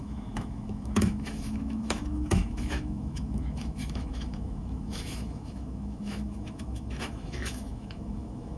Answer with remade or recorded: remade